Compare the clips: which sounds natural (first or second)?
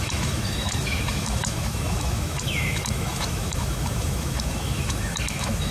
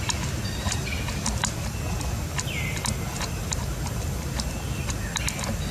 second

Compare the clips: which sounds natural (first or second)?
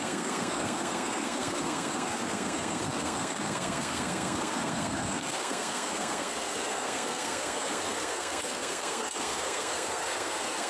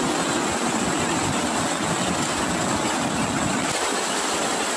second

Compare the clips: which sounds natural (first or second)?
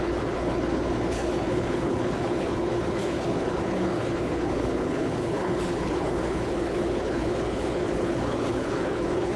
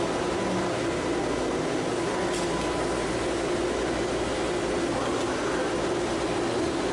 second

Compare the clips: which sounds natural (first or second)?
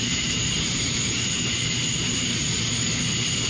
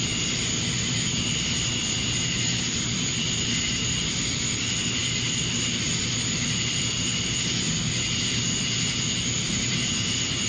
second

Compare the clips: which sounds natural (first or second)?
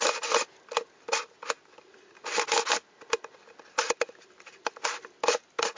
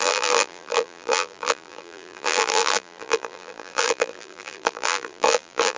first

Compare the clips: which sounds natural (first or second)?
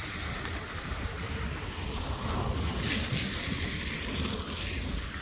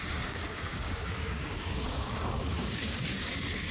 first